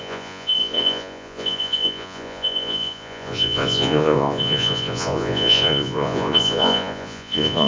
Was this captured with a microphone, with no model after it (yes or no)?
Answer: no